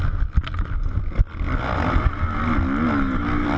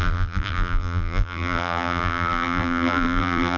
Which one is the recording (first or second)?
first